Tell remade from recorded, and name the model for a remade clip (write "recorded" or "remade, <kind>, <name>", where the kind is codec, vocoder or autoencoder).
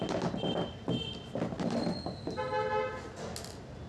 recorded